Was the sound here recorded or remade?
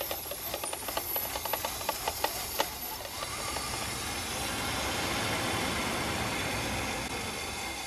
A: recorded